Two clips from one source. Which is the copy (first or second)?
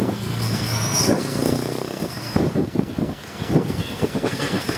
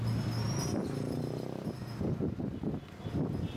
first